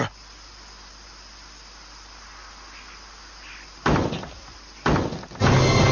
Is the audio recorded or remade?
recorded